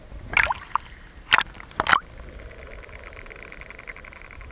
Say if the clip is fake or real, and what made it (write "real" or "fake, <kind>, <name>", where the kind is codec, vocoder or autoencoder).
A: real